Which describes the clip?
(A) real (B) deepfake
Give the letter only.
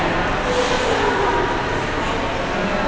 A